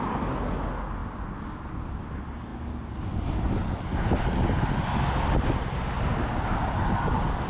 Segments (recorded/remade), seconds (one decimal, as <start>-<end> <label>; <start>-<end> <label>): 0.0-7.5 recorded